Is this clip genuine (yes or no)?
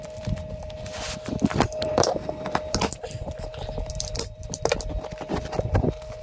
no